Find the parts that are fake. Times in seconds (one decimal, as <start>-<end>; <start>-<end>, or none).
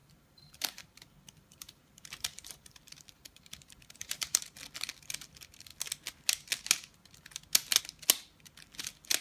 0.0-4.4